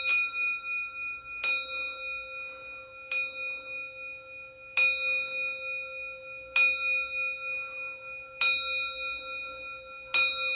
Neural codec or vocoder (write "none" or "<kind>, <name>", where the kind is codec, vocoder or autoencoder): none